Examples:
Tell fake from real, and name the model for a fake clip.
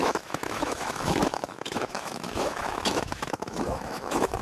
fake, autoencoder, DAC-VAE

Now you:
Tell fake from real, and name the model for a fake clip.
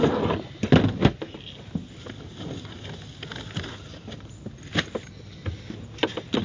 real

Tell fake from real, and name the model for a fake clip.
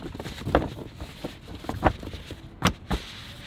real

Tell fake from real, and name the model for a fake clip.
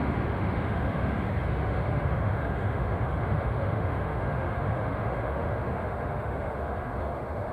fake, autoencoder, DAC-VAE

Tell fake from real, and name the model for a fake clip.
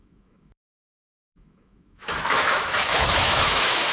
fake, autoencoder, DAC-VAE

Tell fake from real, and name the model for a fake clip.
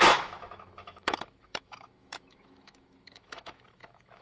fake, autoencoder, DAC-VAE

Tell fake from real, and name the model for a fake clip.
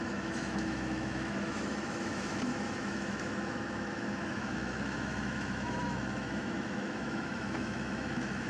fake, autoencoder, DAC-VAE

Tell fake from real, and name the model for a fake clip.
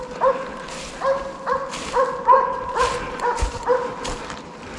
real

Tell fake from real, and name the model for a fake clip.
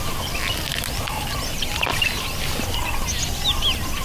real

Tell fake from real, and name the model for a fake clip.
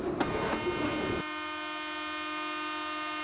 real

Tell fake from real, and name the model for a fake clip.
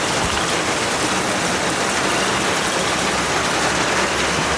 real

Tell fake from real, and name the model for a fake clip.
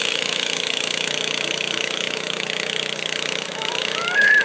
fake, autoencoder, DAC-VAE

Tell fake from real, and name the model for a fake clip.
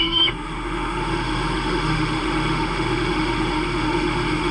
fake, autoencoder, DAC-VAE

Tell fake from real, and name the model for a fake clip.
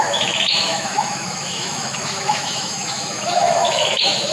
fake, autoencoder, DAC-VAE